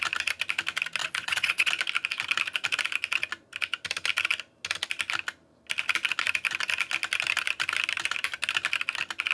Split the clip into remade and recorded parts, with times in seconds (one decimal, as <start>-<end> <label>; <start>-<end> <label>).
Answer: 0.0-1.0 recorded; 1.0-1.7 remade; 1.7-9.3 recorded